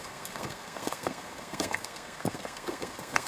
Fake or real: fake